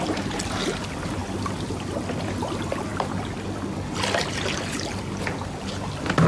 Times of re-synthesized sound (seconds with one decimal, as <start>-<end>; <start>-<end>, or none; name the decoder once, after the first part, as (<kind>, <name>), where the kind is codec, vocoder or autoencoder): none